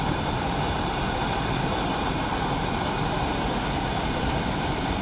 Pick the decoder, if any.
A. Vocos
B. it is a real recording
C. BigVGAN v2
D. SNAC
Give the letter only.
C